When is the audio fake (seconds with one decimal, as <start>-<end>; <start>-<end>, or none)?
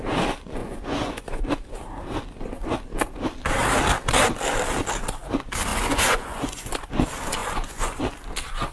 0.6-1.4; 5.7-6.7; 7.4-8.0